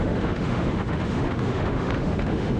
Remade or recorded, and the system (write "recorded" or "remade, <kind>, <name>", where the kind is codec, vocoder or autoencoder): remade, autoencoder, DAC-VAE